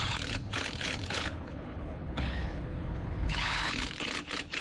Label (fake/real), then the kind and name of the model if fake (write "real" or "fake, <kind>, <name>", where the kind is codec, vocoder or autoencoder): fake, codec, HILCodec